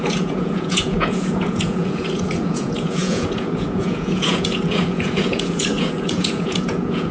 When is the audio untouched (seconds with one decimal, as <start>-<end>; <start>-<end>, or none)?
none